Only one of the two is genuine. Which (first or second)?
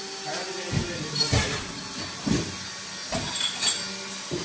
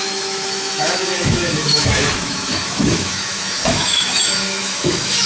first